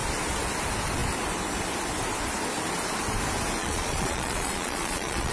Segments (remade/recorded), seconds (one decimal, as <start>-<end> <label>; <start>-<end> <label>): 0.0-3.6 recorded; 3.6-5.3 remade